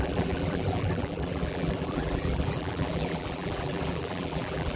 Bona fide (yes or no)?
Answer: no